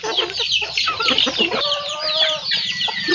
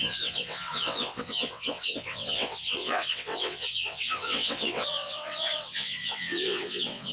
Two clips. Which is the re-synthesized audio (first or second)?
second